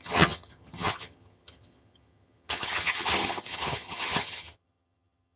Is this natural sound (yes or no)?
no